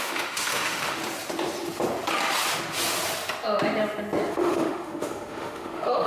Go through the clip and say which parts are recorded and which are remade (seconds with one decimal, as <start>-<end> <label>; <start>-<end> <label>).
0.0-1.0 remade; 1.0-4.3 recorded; 4.3-6.1 remade